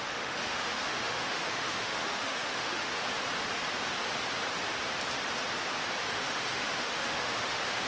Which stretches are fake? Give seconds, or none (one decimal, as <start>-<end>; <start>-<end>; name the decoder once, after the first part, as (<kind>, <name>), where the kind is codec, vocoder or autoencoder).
0.0-2.9 (autoencoder, DAC-VAE); 6.0-7.9